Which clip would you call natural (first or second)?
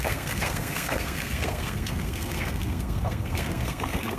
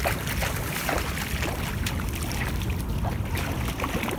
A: second